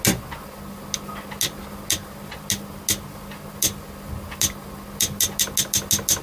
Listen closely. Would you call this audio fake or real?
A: real